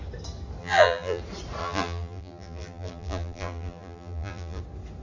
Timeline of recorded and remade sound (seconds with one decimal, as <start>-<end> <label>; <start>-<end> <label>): 0.0-0.6 recorded; 0.6-1.2 remade; 1.2-1.6 recorded; 1.6-4.6 remade; 4.6-5.0 recorded